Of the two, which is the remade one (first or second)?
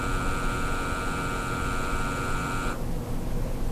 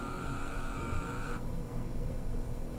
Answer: second